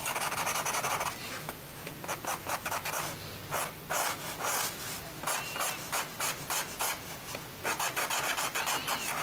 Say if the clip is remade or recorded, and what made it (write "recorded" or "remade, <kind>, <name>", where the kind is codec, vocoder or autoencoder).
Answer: recorded